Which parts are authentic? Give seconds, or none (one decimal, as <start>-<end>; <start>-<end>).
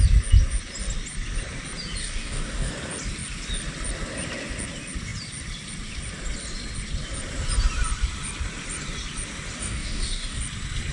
0.0-2.0; 2.7-9.6; 10.4-10.9